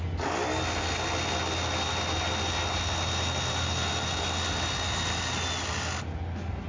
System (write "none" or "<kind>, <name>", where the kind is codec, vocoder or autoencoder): none